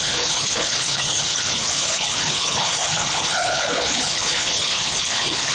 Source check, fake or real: fake